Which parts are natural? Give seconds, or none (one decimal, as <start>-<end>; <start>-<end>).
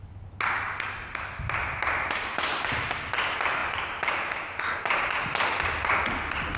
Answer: 0.0-6.6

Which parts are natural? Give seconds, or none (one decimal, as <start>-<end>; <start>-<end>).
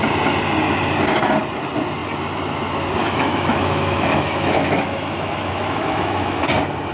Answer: 0.0-3.0; 6.4-6.9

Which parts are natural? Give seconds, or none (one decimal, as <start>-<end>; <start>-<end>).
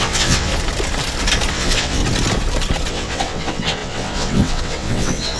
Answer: 0.5-1.5; 2.0-2.9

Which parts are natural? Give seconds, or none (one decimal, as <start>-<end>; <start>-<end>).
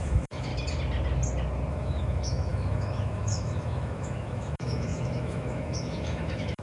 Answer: 0.5-1.7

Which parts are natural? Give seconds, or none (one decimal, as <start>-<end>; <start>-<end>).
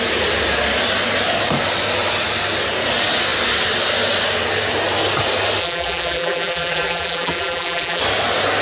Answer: 0.0-5.6; 8.0-8.6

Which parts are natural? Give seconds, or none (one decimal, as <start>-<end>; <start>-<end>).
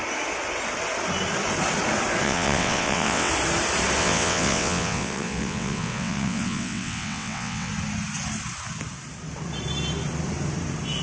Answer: 0.0-2.2; 3.3-4.0; 7.7-11.0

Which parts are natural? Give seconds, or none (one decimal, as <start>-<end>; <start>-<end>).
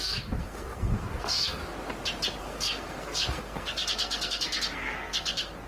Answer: 1.6-2.4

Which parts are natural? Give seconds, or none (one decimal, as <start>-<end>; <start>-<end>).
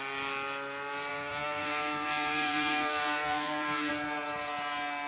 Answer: 0.0-1.1; 3.9-5.1